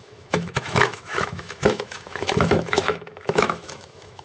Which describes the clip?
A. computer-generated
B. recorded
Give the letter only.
A